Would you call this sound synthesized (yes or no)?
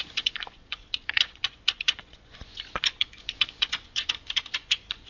yes